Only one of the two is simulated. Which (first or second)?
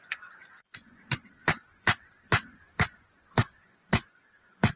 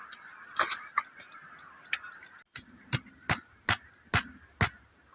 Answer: first